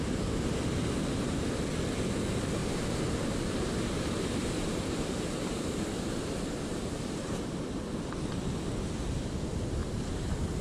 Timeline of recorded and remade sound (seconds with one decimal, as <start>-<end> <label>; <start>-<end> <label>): 0.0-2.6 recorded; 2.6-5.6 remade; 5.6-6.7 recorded; 6.7-7.4 remade; 7.4-9.8 recorded; 9.8-10.6 remade